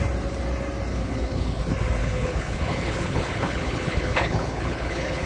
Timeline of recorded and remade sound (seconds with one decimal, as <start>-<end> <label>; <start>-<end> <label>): 0.0-0.9 recorded; 0.9-1.6 remade; 1.6-2.0 recorded; 2.0-5.3 remade